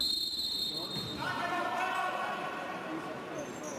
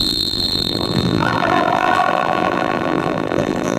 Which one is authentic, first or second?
first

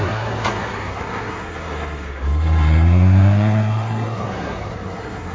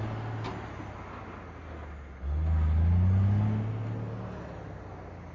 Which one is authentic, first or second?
second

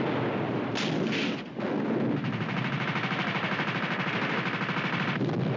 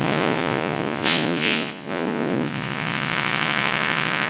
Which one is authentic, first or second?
first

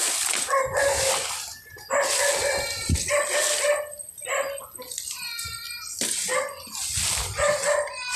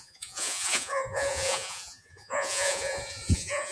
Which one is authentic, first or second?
first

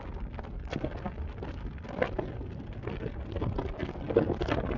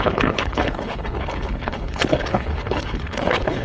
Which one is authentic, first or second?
first